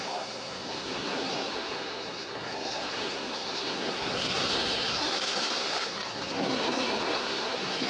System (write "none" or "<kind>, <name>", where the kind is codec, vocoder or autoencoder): codec, SNAC